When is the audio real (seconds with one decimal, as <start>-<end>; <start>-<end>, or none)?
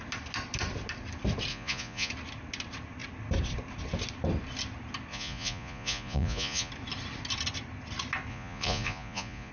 0.0-1.5; 2.1-5.1; 6.7-8.3